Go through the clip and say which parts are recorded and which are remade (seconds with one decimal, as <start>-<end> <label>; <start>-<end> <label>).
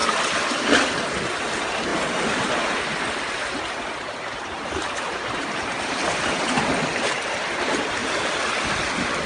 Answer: 0.0-0.9 remade; 0.9-1.9 recorded; 1.9-6.3 remade; 6.3-9.3 recorded